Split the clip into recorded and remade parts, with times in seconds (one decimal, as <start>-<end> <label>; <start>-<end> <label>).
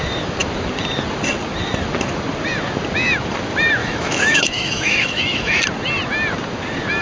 0.0-3.8 recorded; 3.8-5.6 remade; 5.6-7.0 recorded